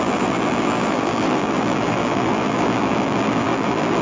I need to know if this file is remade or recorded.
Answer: remade